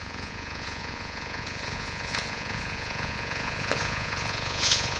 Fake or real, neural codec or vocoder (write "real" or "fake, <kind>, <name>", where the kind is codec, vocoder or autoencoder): fake, vocoder, Vocos